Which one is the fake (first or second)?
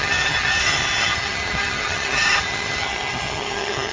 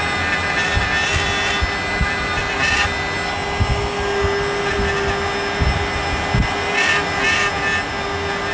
first